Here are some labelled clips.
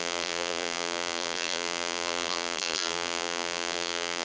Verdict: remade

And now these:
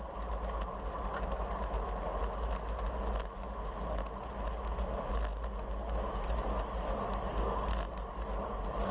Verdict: recorded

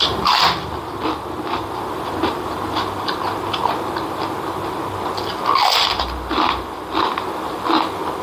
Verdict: recorded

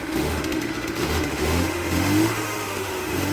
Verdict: remade